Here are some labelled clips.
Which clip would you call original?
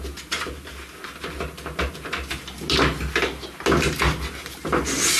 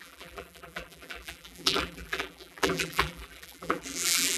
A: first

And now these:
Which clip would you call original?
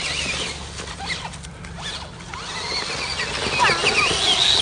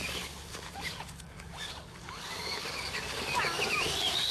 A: first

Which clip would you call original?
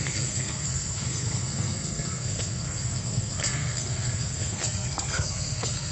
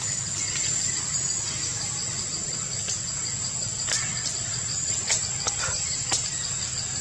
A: second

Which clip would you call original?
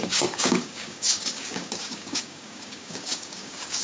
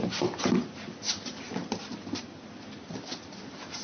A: second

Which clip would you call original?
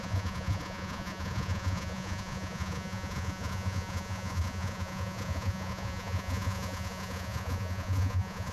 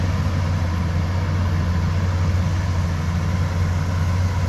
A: second